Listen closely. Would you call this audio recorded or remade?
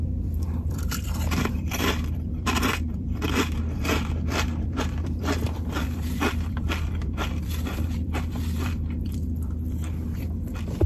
remade